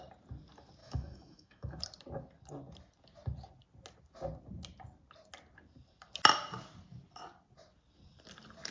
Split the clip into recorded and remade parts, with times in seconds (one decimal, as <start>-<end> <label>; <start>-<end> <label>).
0.0-0.8 recorded; 0.8-1.8 remade; 1.8-8.7 recorded